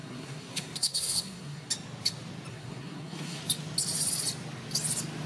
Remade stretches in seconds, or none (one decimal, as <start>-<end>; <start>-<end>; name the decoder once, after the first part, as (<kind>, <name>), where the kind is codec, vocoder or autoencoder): 0.0-1.7 (codec, SNAC); 2.5-3.4